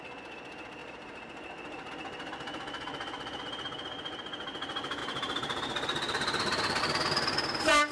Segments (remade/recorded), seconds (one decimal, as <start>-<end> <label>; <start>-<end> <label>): 0.0-0.8 recorded; 0.8-1.9 remade; 1.9-5.0 recorded; 5.0-6.8 remade; 6.8-7.9 recorded